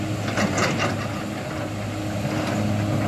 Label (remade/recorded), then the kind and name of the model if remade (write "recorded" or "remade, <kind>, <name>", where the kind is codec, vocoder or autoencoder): recorded